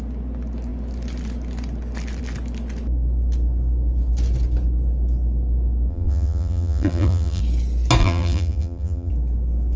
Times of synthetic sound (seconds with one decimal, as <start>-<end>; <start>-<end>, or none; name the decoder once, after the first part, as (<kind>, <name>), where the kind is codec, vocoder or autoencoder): 5.9-7.4 (vocoder, BigVGAN v2); 8.0-9.1